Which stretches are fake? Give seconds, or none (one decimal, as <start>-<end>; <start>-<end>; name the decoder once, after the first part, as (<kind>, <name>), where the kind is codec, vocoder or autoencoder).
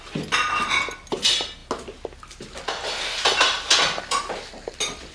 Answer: none